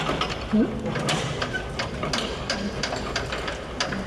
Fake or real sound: real